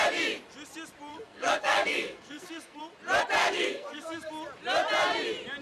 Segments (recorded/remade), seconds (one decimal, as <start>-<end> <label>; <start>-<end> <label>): 0.0-1.1 recorded; 1.1-2.8 remade; 2.8-3.4 recorded; 3.4-4.3 remade; 4.3-5.6 recorded